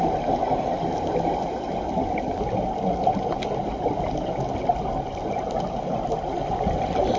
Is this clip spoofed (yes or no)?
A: no